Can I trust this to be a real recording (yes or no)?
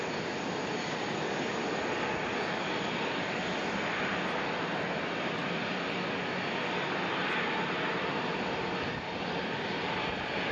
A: yes